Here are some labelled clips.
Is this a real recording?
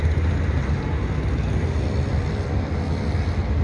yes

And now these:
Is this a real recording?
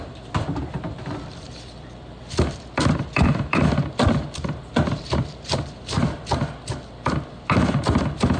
no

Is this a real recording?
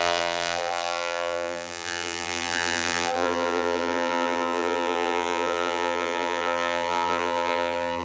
no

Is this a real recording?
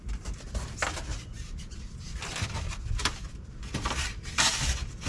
no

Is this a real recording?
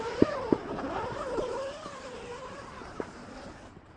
no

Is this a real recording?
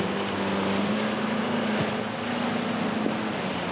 yes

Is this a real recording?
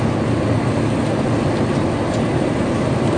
yes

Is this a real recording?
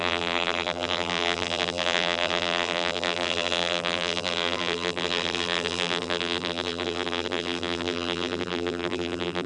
no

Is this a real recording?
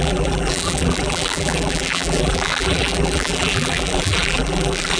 no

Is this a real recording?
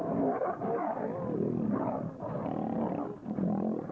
no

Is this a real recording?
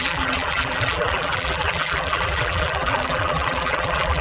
no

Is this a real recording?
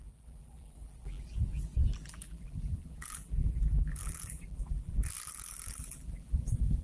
no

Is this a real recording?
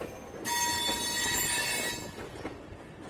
yes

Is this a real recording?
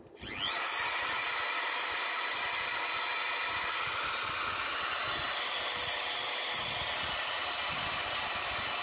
yes